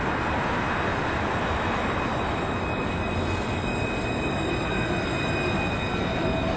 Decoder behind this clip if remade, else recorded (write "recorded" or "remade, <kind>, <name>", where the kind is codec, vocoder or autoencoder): recorded